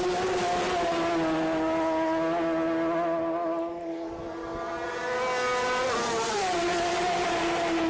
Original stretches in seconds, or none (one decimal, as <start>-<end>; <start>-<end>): 0.0-7.9